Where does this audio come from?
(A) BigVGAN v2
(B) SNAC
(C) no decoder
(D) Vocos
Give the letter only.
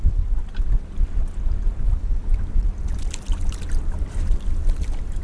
C